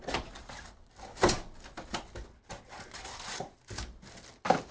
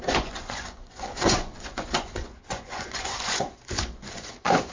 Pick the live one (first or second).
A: first